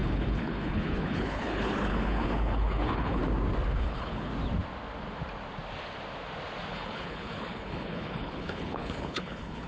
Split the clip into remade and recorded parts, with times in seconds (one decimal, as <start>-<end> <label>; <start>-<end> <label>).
0.0-3.2 remade; 3.2-3.8 recorded; 3.8-4.3 remade; 4.3-6.7 recorded; 6.7-9.7 remade

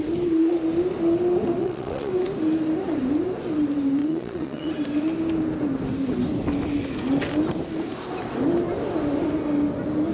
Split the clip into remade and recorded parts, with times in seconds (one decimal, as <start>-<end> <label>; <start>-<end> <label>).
0.0-1.6 recorded; 1.6-2.1 remade; 2.1-4.0 recorded; 4.0-4.7 remade; 4.7-10.1 recorded

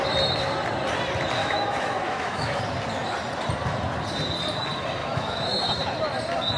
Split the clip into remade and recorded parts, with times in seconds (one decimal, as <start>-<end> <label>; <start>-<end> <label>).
0.0-1.4 recorded; 1.4-2.6 remade; 2.6-5.0 recorded; 5.0-5.6 remade; 5.6-6.6 recorded

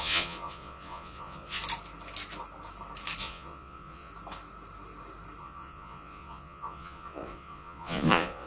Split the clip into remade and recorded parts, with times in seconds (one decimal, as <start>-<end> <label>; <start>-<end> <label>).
0.0-1.6 remade; 1.6-3.2 recorded; 3.2-4.1 remade; 4.1-5.4 recorded; 5.4-8.5 remade

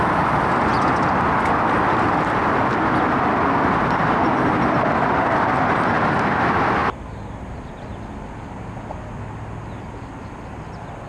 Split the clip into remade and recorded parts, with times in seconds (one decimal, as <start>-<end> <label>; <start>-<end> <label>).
0.0-11.1 recorded

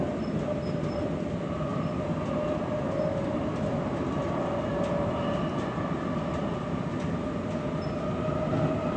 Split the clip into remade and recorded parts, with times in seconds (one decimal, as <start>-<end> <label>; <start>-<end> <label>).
0.0-1.7 recorded; 1.7-2.3 remade; 2.3-9.0 recorded